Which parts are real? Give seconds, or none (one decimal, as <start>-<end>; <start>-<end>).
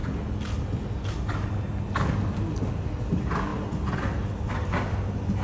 0.0-5.4